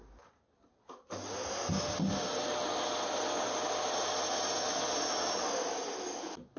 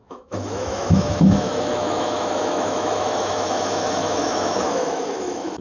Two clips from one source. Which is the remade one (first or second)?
second